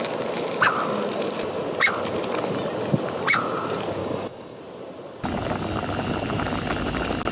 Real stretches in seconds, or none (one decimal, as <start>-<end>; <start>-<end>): 0.0-4.0; 4.6-7.3